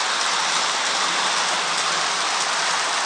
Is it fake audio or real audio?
real